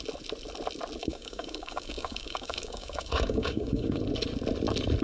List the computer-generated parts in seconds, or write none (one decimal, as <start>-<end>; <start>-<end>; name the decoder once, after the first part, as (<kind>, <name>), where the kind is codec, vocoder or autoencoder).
1.0-4.0 (codec, DAC)